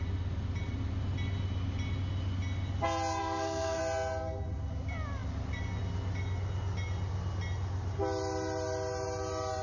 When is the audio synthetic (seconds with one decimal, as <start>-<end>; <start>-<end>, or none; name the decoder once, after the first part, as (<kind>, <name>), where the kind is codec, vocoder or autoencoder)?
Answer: 3.2-3.8 (codec, SNAC)